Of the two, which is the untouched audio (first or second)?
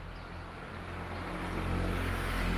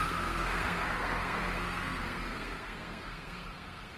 first